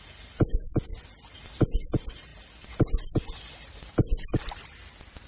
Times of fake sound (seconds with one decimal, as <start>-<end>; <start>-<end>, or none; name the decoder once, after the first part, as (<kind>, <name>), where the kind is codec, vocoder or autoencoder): none